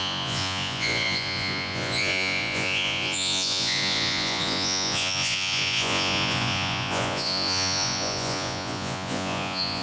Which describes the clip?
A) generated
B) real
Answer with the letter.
A